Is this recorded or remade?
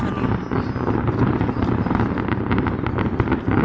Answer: recorded